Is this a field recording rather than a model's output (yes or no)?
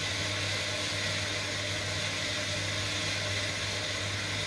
yes